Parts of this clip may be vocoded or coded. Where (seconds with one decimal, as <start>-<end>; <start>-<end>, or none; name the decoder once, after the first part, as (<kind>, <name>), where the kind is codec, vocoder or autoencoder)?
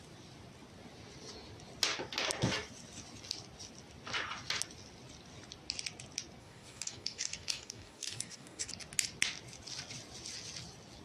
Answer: 6.4-8.7 (codec, DAC)